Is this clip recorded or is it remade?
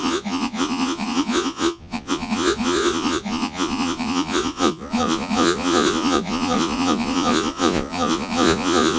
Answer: remade